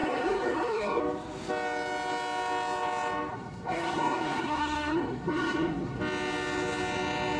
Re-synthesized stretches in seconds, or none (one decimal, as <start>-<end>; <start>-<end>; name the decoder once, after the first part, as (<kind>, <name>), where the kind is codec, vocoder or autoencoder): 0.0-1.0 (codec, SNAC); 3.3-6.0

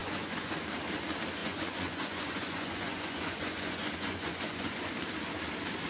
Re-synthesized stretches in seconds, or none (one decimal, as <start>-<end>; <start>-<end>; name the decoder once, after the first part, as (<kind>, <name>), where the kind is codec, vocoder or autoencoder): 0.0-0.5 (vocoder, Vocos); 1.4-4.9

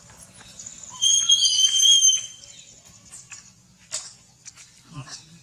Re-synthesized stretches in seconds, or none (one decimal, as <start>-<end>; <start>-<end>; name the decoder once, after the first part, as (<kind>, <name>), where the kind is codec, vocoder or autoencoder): none

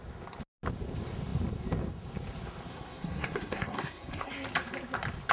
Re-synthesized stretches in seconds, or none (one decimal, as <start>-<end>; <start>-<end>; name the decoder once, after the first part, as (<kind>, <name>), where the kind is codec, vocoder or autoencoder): 2.7-4.3 (codec, SNAC)

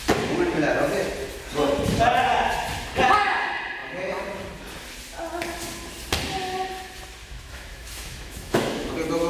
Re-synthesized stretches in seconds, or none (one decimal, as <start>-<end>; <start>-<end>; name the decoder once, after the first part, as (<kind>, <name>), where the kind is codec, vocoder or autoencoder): 7.2-8.9 (autoencoder, DAC-VAE)

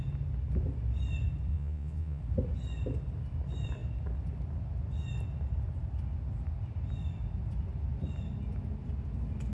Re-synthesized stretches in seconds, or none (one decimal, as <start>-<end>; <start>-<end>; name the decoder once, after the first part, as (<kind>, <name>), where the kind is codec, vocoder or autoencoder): 1.5-2.2 (vocoder, Vocos)